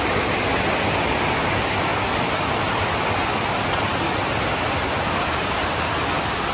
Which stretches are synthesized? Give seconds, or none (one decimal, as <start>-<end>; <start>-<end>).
none